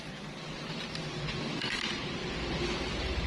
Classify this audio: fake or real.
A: real